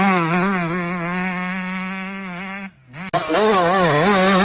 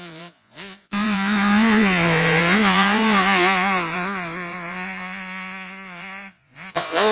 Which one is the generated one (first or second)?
second